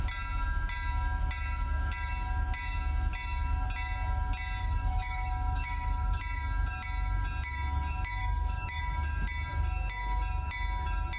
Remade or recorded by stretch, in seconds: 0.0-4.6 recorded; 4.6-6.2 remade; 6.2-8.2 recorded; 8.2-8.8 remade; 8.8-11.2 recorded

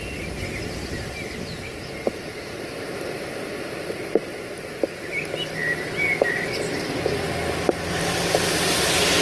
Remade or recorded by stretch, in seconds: 0.0-9.2 recorded